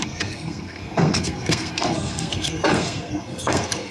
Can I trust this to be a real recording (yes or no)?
no